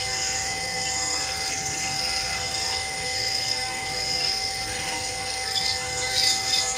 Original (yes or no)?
no